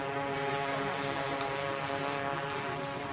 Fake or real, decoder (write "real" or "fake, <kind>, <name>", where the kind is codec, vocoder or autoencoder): real